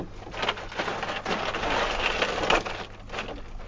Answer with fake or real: real